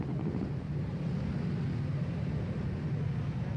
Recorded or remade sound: recorded